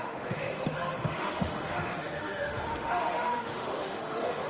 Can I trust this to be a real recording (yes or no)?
no